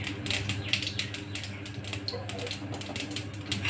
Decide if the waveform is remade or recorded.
recorded